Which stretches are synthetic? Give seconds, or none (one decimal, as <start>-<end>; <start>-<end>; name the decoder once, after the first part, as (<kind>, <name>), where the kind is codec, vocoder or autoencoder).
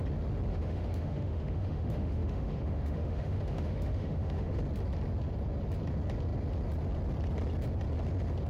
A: 0.5-4.6 (autoencoder, DAC-VAE)